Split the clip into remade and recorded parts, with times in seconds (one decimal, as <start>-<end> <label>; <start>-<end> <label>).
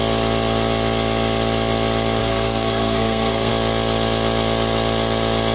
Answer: 0.0-2.2 recorded; 2.2-3.5 remade; 3.5-5.5 recorded